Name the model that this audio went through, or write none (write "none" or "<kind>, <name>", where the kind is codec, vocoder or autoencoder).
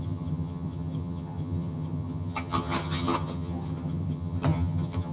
vocoder, HiFi-GAN